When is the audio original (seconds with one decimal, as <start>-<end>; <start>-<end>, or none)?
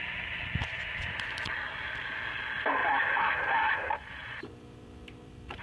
0.0-0.6; 1.4-2.8